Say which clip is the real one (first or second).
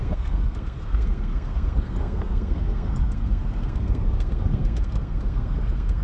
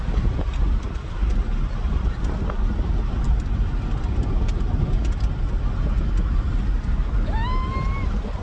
second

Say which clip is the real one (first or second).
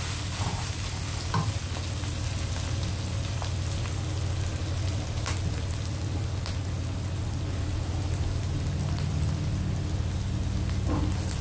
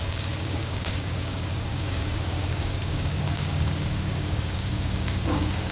first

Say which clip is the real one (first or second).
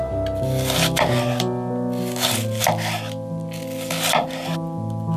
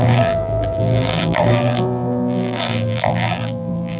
first